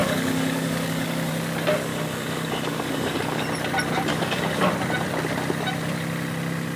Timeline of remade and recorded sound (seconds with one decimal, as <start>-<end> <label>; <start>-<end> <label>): 0.0-1.3 remade; 1.3-1.9 recorded; 1.9-3.4 remade; 3.4-4.1 recorded; 4.1-4.7 remade; 4.7-6.8 recorded